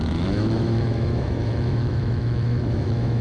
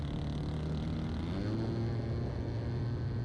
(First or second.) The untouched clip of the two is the second